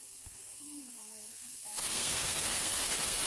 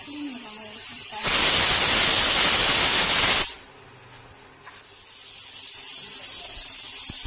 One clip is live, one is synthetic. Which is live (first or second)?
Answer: second